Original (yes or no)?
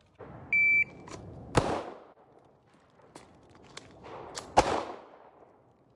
yes